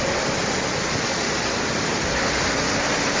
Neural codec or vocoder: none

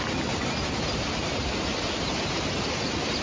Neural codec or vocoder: none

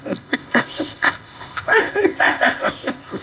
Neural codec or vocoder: codec, ZipCodec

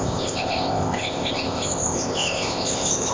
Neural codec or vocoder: codec, ZipCodec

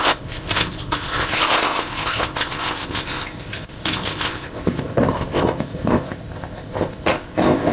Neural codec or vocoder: codec, ZipCodec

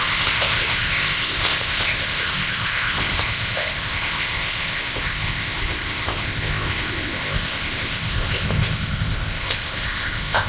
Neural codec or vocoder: codec, ZipCodec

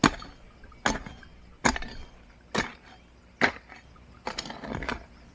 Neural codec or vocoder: none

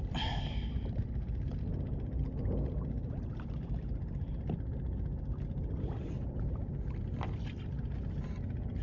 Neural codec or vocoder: none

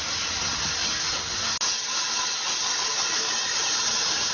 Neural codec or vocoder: none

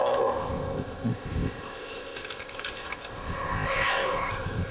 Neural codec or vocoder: codec, ZipCodec